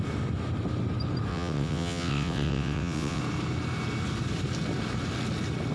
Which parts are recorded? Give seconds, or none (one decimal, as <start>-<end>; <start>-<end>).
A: 0.0-1.3; 3.2-5.7